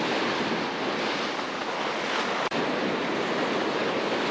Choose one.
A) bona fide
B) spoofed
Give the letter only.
A